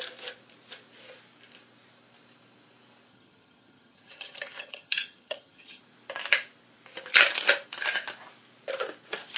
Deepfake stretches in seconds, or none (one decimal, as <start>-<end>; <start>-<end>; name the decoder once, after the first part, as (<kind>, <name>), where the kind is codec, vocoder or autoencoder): 3.1-5.8 (vocoder, HiFi-GAN)